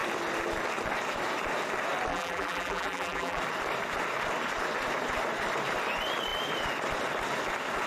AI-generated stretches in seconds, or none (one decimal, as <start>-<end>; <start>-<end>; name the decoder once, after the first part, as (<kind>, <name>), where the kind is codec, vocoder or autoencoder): 2.1-3.4 (vocoder, BigVGAN v2)